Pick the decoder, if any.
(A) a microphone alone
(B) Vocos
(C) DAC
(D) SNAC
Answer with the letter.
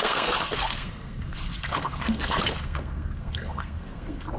D